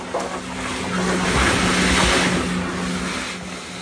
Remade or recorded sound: recorded